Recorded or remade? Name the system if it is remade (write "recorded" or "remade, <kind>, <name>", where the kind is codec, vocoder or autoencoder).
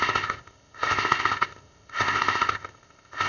remade, codec, ZipCodec